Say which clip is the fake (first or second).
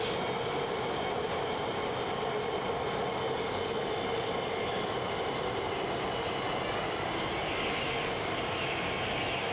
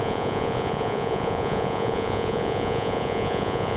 second